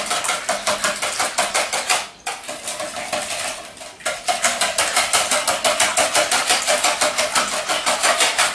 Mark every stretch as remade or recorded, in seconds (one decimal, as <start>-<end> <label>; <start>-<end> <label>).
0.0-8.5 recorded